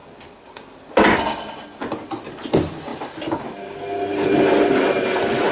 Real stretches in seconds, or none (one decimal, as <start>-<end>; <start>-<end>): 0.0-5.5